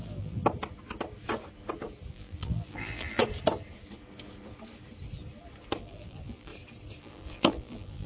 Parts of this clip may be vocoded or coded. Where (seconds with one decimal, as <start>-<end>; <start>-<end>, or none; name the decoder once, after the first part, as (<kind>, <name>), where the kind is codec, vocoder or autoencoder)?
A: 0.0-0.4 (vocoder, BigVGAN v2); 2.1-3.2; 5.8-6.5; 7.0-8.1

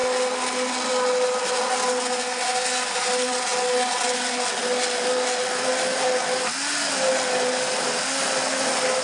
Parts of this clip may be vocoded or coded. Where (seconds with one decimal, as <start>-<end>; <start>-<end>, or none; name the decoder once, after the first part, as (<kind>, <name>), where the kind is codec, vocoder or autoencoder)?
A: none

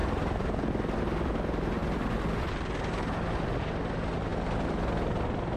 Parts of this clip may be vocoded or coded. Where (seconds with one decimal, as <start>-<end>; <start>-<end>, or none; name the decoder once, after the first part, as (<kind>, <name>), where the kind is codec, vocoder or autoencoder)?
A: 0.0-0.7 (vocoder, BigVGAN v2)

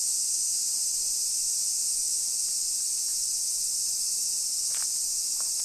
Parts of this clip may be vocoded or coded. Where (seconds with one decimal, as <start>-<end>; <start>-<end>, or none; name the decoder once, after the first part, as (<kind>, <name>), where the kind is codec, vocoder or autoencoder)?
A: 0.5-1.9 (vocoder, BigVGAN v2)

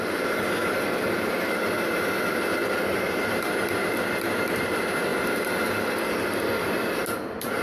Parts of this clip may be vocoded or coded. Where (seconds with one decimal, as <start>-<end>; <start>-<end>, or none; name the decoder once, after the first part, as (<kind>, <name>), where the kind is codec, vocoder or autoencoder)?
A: 2.6-3.5 (vocoder, BigVGAN v2)